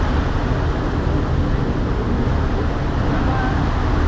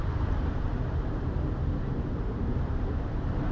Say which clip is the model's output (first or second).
second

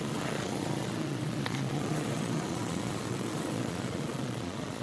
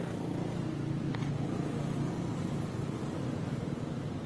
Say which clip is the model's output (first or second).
first